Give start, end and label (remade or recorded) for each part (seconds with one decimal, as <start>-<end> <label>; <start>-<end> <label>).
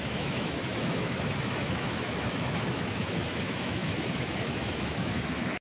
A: 0.0-5.6 remade